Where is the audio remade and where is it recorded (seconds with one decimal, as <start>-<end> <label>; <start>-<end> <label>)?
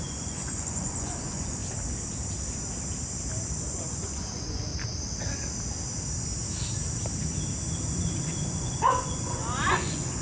0.0-1.6 remade; 1.6-3.5 recorded; 3.5-4.7 remade; 4.7-7.8 recorded; 7.8-10.2 remade